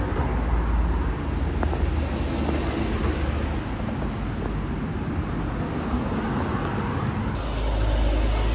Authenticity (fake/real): real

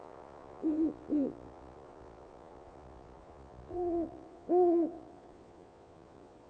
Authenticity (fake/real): fake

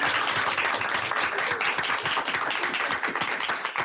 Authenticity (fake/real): real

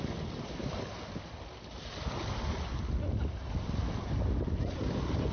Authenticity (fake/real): real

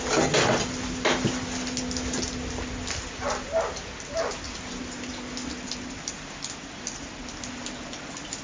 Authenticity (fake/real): real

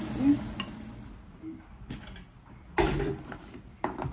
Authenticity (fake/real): real